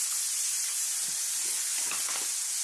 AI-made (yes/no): no